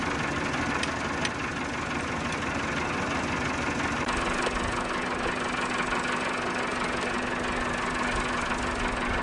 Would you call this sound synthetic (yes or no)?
no